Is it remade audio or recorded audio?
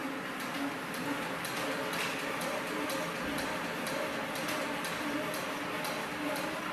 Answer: recorded